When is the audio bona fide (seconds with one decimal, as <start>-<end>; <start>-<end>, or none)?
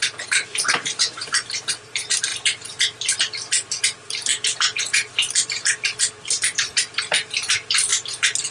2.3-3.8; 4.3-4.8; 5.7-7.0; 7.9-8.5